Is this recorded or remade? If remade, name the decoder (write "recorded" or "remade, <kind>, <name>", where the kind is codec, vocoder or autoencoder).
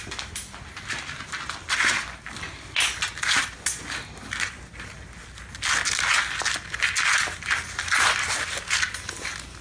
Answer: recorded